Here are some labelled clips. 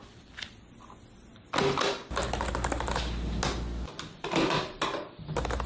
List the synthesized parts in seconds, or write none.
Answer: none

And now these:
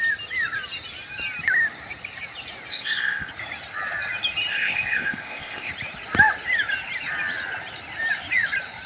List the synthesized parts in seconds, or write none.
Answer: 2.7-3.3 (codec, ZipCodec); 4.5-5.7

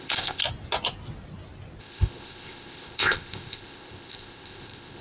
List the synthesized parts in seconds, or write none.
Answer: 0.0-0.4 (codec, ZipCodec); 1.8-5.0

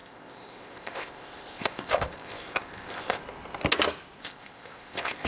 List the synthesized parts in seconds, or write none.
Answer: 0.0-3.2 (codec, ZipCodec); 4.2-5.3

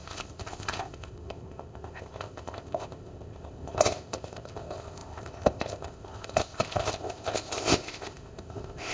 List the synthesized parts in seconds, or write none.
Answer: 0.0-8.9 (codec, ZipCodec)

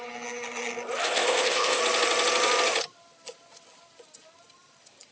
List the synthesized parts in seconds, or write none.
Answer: 1.0-1.8 (codec, ZipCodec)

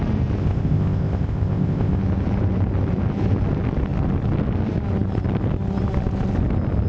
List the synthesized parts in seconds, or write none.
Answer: 0.4-2.0 (codec, ZipCodec)

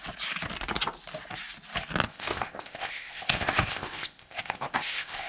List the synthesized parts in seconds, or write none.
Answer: 2.1-5.3 (codec, ZipCodec)